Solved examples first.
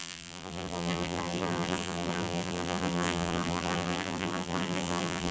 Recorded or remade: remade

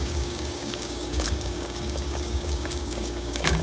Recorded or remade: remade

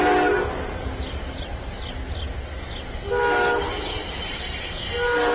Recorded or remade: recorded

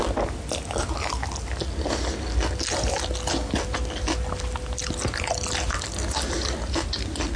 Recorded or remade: recorded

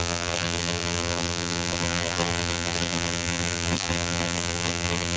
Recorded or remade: remade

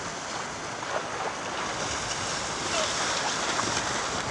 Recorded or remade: recorded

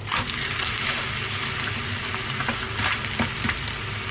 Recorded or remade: recorded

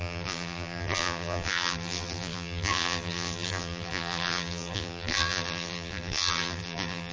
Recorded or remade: remade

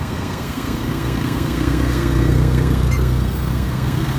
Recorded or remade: remade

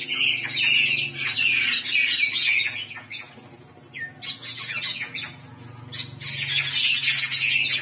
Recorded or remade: recorded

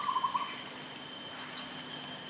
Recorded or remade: recorded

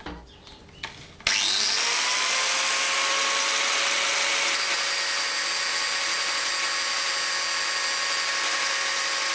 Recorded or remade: recorded